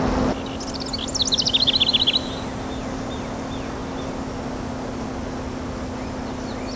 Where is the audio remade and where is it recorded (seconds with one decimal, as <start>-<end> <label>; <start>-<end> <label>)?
0.0-6.8 recorded